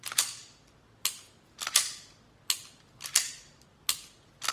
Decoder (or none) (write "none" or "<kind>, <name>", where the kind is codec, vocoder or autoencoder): none